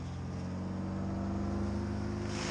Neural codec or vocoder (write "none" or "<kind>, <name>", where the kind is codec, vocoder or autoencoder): none